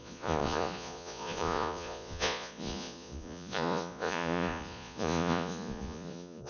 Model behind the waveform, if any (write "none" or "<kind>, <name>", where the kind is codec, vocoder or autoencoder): vocoder, Vocos